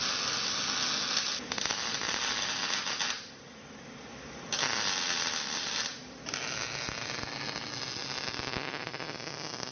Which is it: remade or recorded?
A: recorded